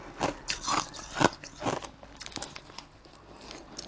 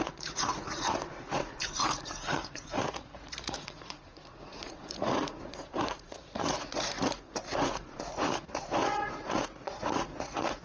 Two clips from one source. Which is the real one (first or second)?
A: first